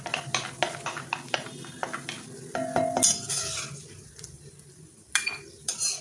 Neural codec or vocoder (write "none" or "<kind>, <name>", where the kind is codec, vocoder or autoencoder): none